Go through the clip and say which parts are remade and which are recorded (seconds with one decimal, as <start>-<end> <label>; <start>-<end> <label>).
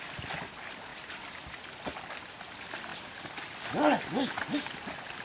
0.0-0.9 recorded; 0.9-2.5 remade; 2.5-2.9 recorded; 2.9-3.4 remade; 3.4-5.2 recorded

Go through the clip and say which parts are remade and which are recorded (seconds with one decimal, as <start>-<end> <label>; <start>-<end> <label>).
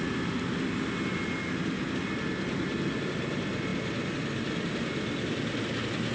0.0-6.1 recorded